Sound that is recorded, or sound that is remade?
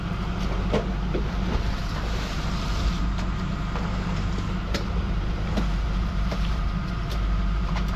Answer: remade